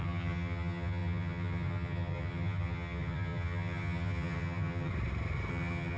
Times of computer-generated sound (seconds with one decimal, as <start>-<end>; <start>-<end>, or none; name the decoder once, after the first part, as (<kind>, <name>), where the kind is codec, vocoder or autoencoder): 0.0-4.9 (vocoder, HiFi-GAN); 5.5-6.0